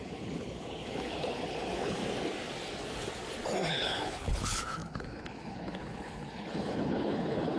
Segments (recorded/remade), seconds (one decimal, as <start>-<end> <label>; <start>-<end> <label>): 0.0-2.0 remade; 2.0-3.7 recorded; 3.7-7.6 remade